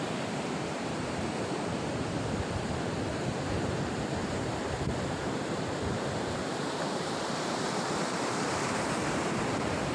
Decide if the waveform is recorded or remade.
remade